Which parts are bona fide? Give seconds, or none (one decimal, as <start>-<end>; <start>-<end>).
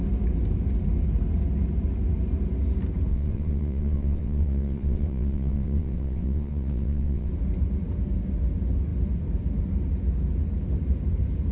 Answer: 0.0-3.1; 7.3-11.5